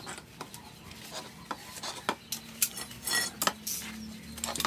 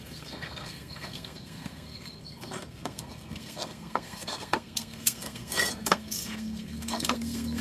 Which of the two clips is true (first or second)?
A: first